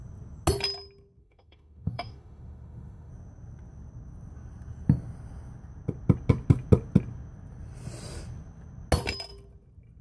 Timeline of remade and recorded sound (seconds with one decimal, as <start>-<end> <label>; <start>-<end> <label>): 0.0-1.2 recorded; 1.2-3.1 remade; 3.1-10.0 recorded